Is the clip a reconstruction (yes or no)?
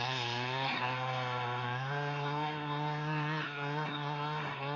yes